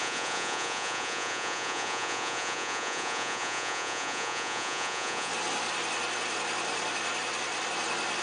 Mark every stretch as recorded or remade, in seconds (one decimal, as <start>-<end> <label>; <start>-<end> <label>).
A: 0.0-5.3 remade; 5.3-8.2 recorded